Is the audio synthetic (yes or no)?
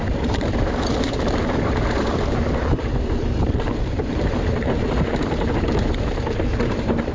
yes